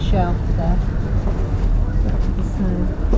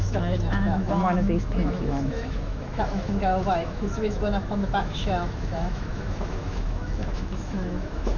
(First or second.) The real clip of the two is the first